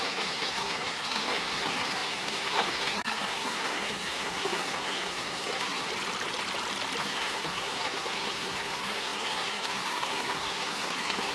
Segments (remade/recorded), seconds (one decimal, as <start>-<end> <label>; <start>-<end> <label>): 0.0-5.9 remade; 5.9-7.0 recorded; 7.0-11.3 remade